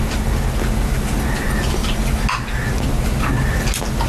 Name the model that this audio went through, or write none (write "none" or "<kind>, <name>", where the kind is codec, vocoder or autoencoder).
none